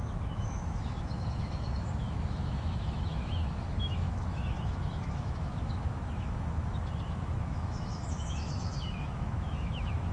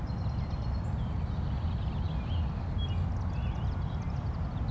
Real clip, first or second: second